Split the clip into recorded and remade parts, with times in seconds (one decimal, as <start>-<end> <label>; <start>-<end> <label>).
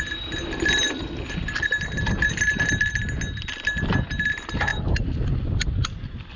0.0-6.4 recorded